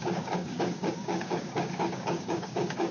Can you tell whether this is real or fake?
fake